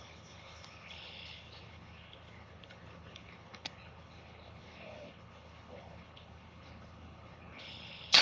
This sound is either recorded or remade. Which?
remade